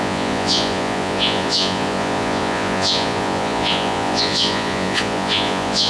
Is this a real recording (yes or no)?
no